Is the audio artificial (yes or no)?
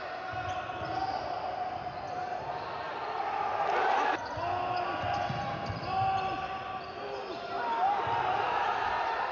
no